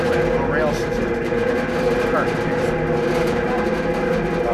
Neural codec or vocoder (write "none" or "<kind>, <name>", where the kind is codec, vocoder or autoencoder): none